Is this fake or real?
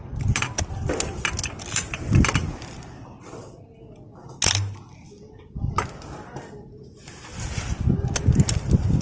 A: real